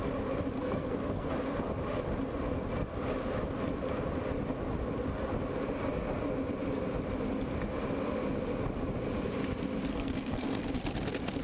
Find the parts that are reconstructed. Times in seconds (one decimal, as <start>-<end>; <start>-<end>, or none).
0.6-1.3; 9.9-10.6